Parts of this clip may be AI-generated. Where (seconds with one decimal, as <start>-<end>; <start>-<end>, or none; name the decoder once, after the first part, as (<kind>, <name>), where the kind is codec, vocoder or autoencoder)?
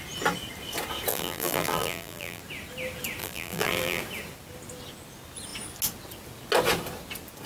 1.1-2.4 (vocoder, BigVGAN v2); 3.2-4.0